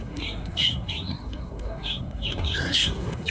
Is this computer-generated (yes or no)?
yes